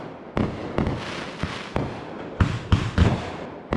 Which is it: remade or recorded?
recorded